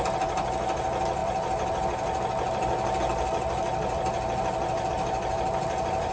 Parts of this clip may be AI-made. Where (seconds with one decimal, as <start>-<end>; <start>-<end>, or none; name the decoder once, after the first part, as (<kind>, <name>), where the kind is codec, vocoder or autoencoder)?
none